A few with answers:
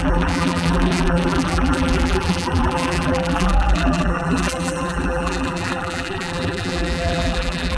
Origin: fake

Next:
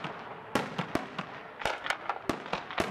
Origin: real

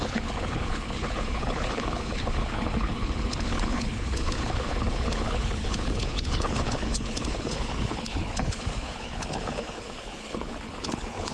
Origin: fake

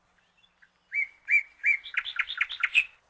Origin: real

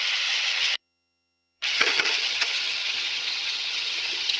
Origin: fake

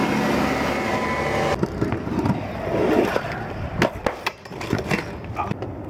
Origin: real